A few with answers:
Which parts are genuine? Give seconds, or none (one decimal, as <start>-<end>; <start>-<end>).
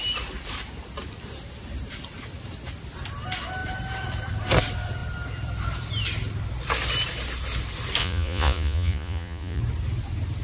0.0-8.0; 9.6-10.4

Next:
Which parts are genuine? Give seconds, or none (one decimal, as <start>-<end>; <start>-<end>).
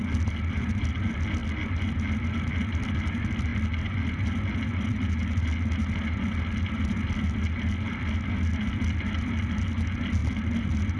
0.0-11.0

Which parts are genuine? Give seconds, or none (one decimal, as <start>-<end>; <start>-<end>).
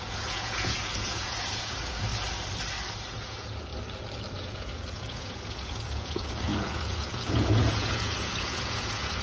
2.1-3.1; 3.7-4.3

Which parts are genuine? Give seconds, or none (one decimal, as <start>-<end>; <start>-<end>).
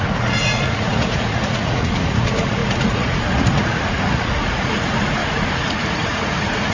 none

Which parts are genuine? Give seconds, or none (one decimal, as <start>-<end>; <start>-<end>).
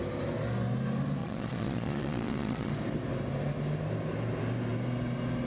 0.0-1.2; 2.7-5.5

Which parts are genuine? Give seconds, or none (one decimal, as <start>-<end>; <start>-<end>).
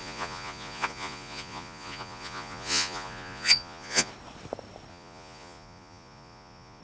4.1-4.9